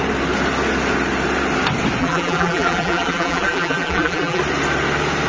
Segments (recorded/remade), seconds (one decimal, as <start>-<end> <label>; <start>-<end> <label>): 0.0-2.0 recorded; 2.0-4.4 remade; 4.4-5.3 recorded